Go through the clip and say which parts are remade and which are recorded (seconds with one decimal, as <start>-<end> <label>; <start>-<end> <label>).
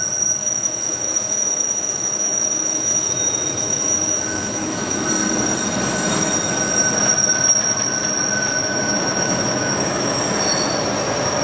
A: 0.0-0.4 recorded; 0.4-5.1 remade; 5.1-8.6 recorded; 8.6-10.2 remade; 10.2-11.4 recorded